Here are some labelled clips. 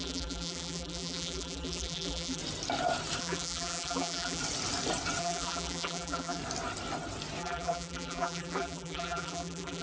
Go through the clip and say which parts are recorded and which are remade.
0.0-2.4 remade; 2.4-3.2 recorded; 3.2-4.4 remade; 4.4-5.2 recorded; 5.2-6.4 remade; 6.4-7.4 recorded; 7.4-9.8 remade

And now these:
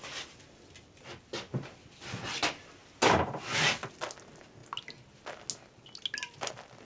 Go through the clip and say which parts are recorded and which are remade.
0.0-6.9 recorded

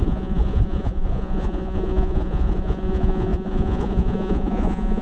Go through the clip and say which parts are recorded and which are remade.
0.0-5.0 remade

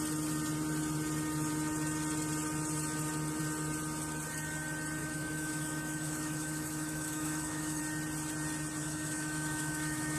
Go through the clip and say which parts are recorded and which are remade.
0.0-5.0 recorded; 5.0-7.8 remade; 7.8-8.8 recorded; 8.8-10.2 remade

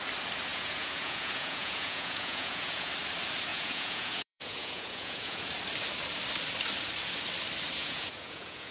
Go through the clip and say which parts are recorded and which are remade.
0.0-0.5 recorded; 0.5-2.9 remade; 2.9-3.5 recorded; 3.5-5.5 remade; 5.5-7.8 recorded; 7.8-8.7 remade

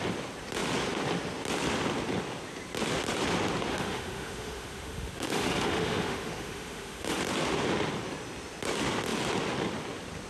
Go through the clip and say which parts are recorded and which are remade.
0.0-3.7 recorded; 3.7-7.2 remade; 7.2-10.3 recorded

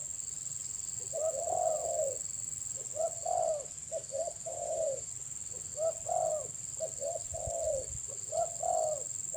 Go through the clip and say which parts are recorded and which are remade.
0.0-4.5 recorded; 4.5-5.1 remade; 5.1-9.4 recorded

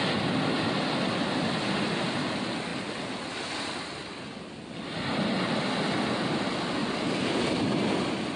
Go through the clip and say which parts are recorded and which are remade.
0.0-8.4 recorded